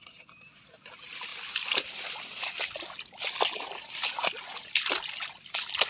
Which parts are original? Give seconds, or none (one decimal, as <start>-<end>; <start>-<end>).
0.0-5.9